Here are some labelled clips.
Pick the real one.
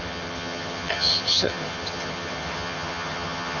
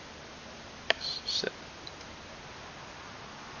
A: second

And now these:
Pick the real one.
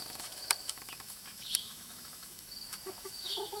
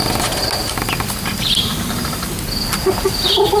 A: second